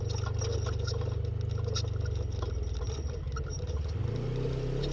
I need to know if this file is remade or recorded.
recorded